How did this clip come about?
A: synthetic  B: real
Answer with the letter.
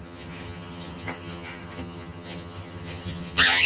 A